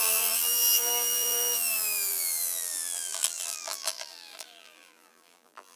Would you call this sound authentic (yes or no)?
no